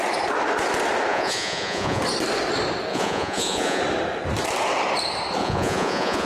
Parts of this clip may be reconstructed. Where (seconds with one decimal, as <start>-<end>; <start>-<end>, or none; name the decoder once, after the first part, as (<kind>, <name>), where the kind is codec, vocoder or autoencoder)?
1.1-2.0 (vocoder, Vocos); 2.9-3.8; 5.4-6.3